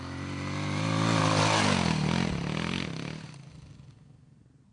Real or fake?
real